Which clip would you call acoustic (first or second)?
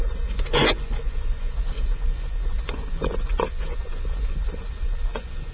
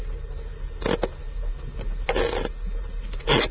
second